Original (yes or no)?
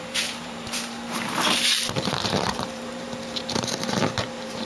no